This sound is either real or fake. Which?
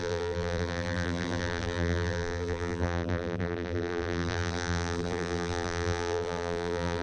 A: fake